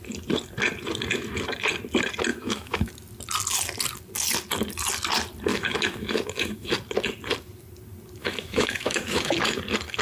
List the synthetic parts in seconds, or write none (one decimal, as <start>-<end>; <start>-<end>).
2.3-2.9; 5.5-6.7; 8.2-9.6